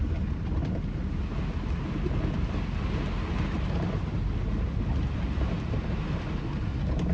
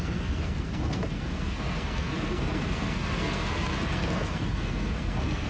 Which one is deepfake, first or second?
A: second